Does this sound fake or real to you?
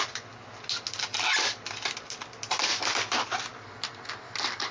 real